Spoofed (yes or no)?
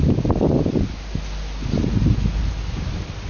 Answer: no